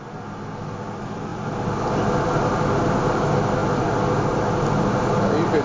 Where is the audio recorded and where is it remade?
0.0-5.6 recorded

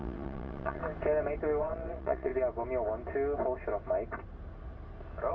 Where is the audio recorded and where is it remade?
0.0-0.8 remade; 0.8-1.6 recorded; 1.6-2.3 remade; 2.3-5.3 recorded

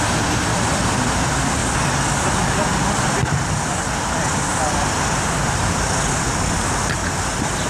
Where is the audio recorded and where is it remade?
0.0-7.7 recorded

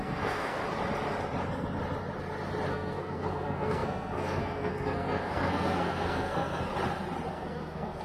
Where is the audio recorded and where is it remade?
0.0-0.6 remade; 0.6-2.7 recorded; 2.7-6.7 remade; 6.7-7.3 recorded; 7.3-8.0 remade

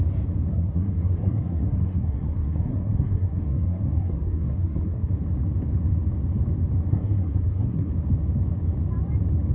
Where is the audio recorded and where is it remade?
0.0-0.5 recorded; 0.5-5.1 remade; 5.1-6.9 recorded; 6.9-7.9 remade; 7.9-9.5 recorded